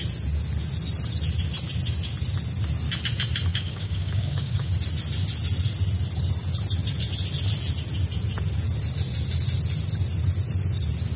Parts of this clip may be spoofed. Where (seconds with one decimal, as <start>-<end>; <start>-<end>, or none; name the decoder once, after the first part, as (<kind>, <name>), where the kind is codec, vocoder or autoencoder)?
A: 3.5-4.7 (codec, DAC)